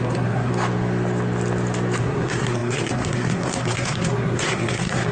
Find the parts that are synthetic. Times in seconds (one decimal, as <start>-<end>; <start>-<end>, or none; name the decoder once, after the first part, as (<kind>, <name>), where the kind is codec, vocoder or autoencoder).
0.0-0.5 (codec, SNAC); 2.0-5.1